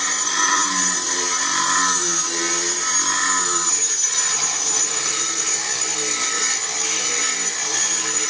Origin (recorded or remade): recorded